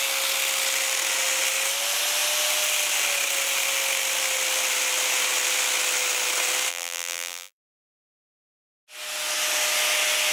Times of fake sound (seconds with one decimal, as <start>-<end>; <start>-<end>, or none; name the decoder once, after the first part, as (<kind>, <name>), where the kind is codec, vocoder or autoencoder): 6.7-7.8 (vocoder, BigVGAN v2)